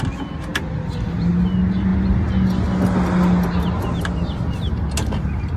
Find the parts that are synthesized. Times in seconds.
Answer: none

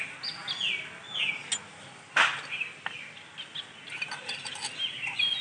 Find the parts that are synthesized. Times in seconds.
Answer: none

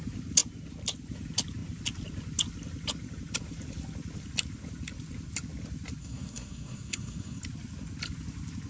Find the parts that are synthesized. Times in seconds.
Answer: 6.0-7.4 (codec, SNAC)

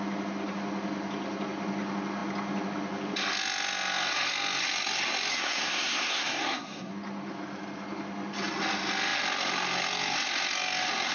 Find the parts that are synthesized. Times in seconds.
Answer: 5.3-6.9 (codec, SNAC)

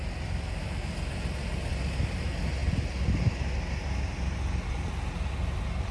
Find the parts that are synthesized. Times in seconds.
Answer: none

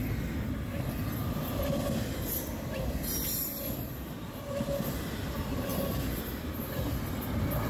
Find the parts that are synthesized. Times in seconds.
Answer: none

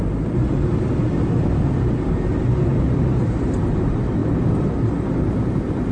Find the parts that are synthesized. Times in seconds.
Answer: none